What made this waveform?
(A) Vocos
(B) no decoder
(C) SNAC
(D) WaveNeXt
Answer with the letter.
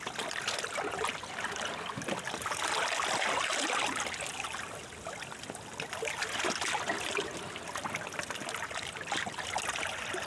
B